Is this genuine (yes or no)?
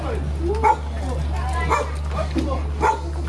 yes